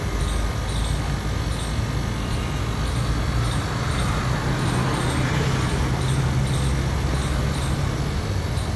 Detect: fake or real real